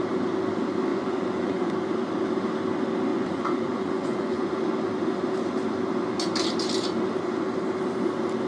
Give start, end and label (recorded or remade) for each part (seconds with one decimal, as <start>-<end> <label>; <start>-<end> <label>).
0.0-0.9 recorded; 0.9-1.7 remade; 1.7-3.1 recorded; 3.1-4.5 remade; 4.5-8.5 recorded